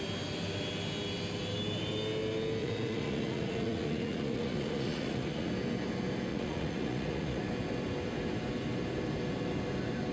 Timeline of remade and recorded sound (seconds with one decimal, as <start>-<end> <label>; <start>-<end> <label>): 0.0-2.6 recorded; 2.6-5.5 remade; 5.5-6.3 recorded; 6.3-7.4 remade; 7.4-10.1 recorded